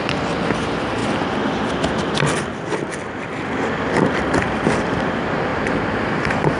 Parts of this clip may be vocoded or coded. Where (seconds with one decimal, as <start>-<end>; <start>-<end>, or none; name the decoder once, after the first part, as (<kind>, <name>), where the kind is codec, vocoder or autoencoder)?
0.0-5.5 (vocoder, BigVGAN v2); 6.1-6.6